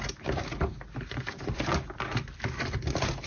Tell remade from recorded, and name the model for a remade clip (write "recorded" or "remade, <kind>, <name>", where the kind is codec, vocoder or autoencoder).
recorded